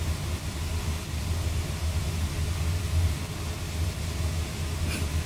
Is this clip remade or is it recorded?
recorded